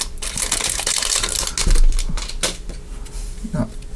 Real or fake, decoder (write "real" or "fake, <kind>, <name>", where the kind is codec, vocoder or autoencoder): real